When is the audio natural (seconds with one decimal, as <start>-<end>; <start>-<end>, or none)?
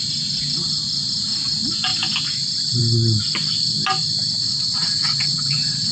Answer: 0.0-4.5